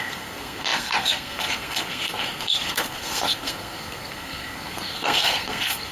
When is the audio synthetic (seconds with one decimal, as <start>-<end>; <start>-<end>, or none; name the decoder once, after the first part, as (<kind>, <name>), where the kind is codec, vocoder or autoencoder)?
0.0-5.9 (codec, SNAC)